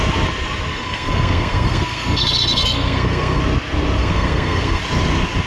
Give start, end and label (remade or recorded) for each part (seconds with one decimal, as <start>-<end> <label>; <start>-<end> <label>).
0.0-0.7 recorded; 0.7-3.4 remade; 3.4-4.0 recorded; 4.0-4.8 remade; 4.8-5.5 recorded